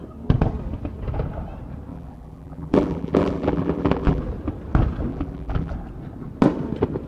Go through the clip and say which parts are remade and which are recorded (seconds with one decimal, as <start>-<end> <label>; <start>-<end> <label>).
0.0-1.9 recorded; 1.9-4.2 remade; 4.2-5.1 recorded; 5.1-5.7 remade; 5.7-7.1 recorded